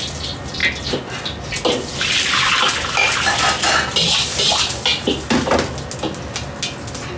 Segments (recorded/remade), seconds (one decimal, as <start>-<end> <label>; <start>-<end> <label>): 0.0-7.2 recorded